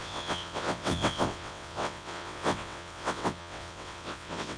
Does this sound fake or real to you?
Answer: fake